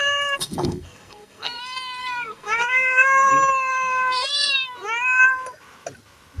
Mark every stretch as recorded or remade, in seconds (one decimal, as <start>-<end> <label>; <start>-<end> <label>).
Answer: 0.0-1.6 remade; 1.6-2.0 recorded; 2.0-3.3 remade; 3.3-3.7 recorded; 3.7-4.5 remade; 4.5-6.4 recorded